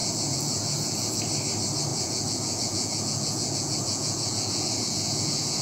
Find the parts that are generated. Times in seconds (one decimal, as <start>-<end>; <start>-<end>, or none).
0.0-1.2; 1.9-5.6